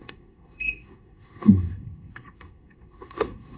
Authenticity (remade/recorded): remade